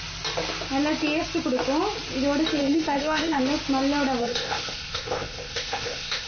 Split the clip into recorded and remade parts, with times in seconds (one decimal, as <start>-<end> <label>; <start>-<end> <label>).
0.0-2.6 recorded; 2.6-3.4 remade; 3.4-4.2 recorded; 4.2-6.3 remade